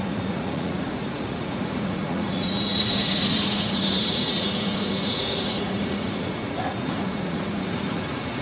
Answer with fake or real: fake